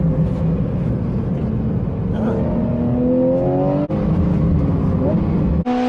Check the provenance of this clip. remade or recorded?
recorded